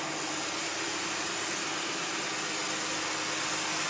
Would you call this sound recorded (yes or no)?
yes